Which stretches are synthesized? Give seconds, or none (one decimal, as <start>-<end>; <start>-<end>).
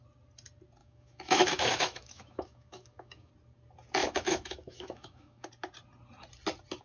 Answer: 0.8-3.3; 4.0-5.5